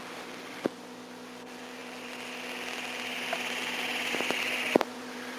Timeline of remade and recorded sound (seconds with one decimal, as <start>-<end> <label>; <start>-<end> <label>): 0.0-5.4 recorded